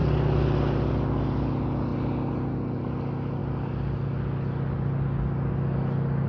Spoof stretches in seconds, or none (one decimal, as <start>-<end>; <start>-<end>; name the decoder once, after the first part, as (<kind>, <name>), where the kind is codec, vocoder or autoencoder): none